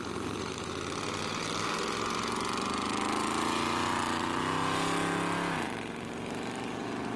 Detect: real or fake real